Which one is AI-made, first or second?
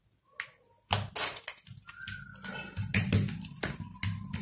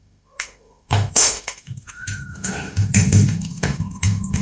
second